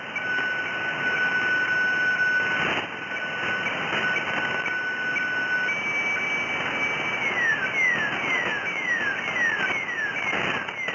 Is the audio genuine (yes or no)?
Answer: yes